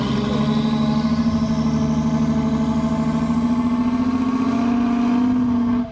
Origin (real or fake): real